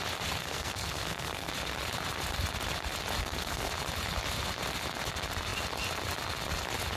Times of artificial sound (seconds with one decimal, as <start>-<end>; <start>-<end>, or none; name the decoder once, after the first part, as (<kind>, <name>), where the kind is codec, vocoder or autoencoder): 0.4-1.5 (codec, SNAC); 3.2-3.7

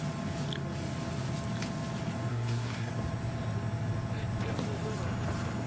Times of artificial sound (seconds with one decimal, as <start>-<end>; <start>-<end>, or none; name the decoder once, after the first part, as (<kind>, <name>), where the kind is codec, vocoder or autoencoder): 2.3-2.9 (codec, SNAC)

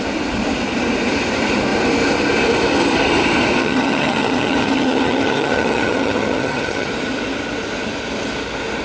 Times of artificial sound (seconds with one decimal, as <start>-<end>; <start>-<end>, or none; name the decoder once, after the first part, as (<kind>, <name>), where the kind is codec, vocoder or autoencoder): 3.6-6.9 (vocoder, HiFi-GAN)

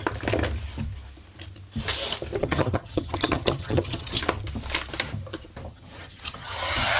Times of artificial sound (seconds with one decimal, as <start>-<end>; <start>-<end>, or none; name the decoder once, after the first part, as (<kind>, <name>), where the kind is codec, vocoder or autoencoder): 2.4-4.2 (vocoder, HiFi-GAN); 5.7-7.0